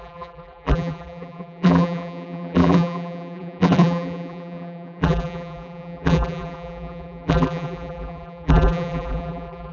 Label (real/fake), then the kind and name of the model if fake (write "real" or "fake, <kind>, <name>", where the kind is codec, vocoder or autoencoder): fake, vocoder, BigVGAN v2